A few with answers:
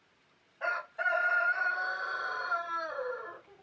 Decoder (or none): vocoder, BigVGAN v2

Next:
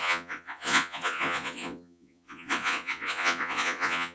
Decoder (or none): vocoder, Vocos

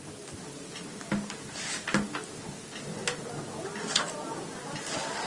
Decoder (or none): none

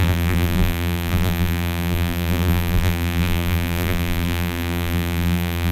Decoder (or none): vocoder, BigVGAN v2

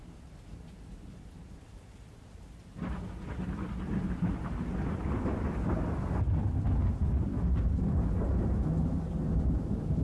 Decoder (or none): none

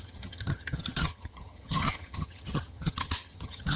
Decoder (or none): vocoder, HiFi-GAN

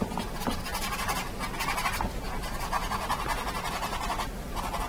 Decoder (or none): none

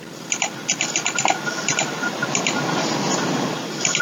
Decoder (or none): none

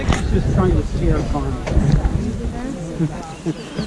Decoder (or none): none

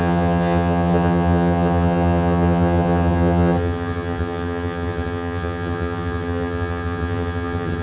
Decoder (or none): vocoder, HiFi-GAN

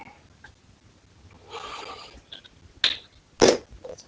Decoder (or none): none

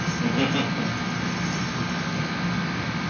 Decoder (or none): none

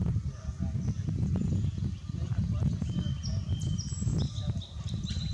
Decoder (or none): none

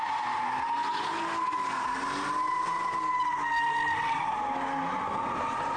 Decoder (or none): none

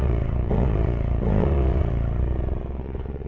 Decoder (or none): vocoder, Vocos